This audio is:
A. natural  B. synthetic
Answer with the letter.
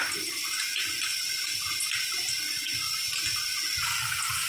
A